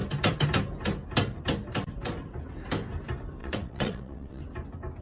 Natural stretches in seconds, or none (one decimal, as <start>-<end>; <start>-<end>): 0.0-3.4; 4.4-5.0